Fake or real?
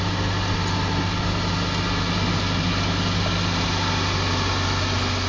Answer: real